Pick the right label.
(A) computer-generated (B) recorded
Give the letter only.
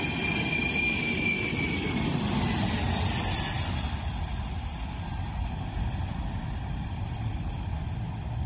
B